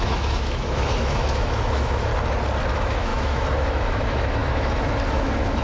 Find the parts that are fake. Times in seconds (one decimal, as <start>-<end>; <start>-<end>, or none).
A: 0.0-2.1; 2.7-5.6